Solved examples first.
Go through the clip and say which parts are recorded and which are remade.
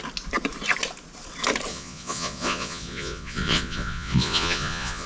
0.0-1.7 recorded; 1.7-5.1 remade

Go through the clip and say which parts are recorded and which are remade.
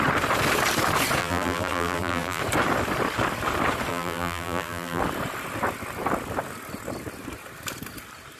0.0-1.2 recorded; 1.2-2.4 remade; 2.4-3.9 recorded; 3.9-5.0 remade; 5.0-8.4 recorded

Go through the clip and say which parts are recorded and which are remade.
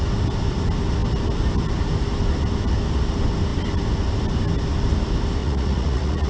0.0-5.4 recorded; 5.4-6.3 remade